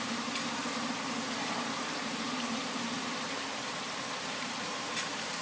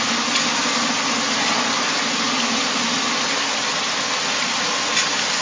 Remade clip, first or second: first